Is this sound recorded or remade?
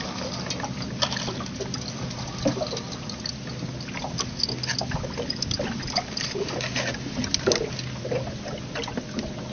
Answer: recorded